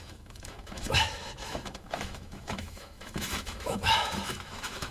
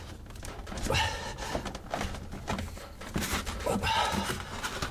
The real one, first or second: second